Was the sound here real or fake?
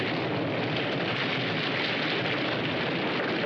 real